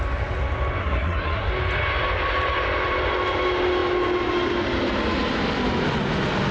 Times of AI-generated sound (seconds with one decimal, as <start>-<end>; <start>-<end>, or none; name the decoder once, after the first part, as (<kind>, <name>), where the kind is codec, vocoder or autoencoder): 0.8-1.5 (codec, SNAC)